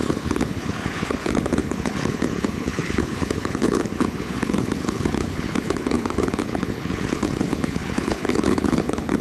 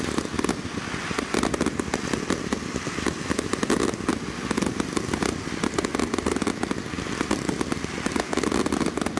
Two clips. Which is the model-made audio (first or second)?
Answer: first